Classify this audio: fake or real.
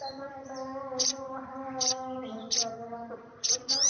fake